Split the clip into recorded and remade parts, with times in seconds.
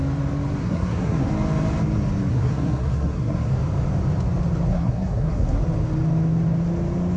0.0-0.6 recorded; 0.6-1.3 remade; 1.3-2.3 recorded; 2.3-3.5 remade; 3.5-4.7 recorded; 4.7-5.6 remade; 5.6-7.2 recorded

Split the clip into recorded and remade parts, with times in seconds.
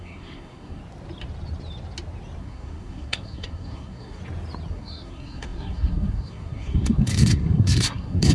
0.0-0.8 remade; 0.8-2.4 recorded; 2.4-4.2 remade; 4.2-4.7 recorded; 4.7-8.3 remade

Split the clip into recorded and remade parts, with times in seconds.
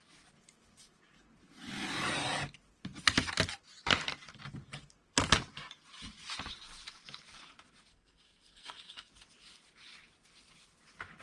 0.0-7.9 recorded; 7.9-9.1 remade; 9.1-11.2 recorded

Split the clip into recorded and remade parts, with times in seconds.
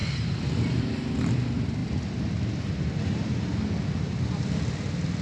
0.0-5.2 recorded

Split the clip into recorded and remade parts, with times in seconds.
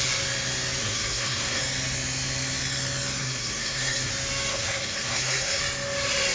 0.0-0.8 recorded; 0.8-1.6 remade; 1.6-3.2 recorded; 3.2-4.1 remade; 4.1-4.5 recorded; 4.5-5.6 remade; 5.6-6.3 recorded